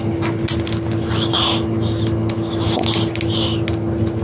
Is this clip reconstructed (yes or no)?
no